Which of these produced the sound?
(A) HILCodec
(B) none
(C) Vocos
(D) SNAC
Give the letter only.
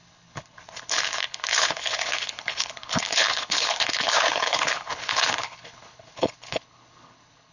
A